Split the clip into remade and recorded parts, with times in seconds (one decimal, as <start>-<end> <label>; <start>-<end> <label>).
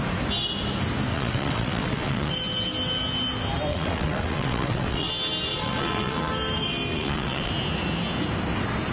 0.0-1.1 recorded; 1.1-2.3 remade; 2.3-3.7 recorded; 3.7-5.1 remade; 5.1-5.5 recorded; 5.5-6.3 remade; 6.3-6.9 recorded; 6.9-7.5 remade; 7.5-8.9 recorded